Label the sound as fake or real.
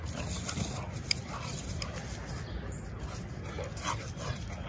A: real